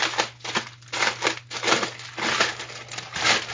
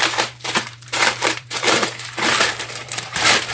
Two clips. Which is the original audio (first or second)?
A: first